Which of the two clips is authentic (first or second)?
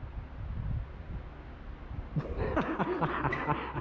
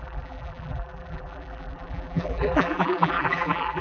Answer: first